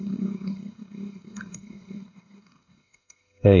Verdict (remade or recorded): remade